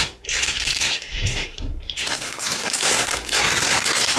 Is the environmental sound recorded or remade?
remade